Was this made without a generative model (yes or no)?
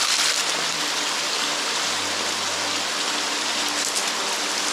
yes